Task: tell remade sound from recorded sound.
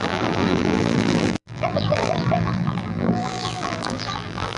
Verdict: remade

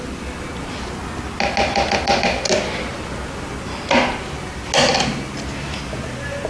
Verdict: recorded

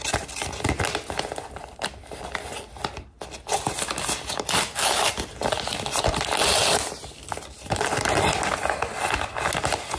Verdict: recorded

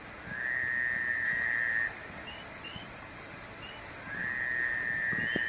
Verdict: recorded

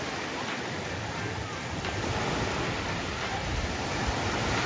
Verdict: recorded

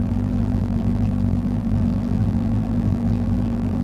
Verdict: remade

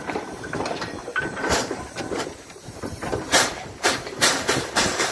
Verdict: remade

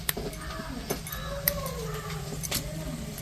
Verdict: recorded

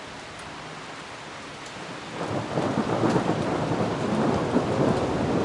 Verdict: recorded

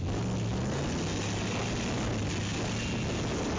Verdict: recorded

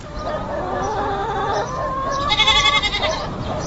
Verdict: remade